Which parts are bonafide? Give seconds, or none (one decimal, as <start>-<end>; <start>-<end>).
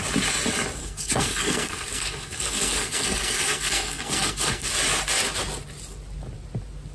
0.0-0.8; 4.7-6.9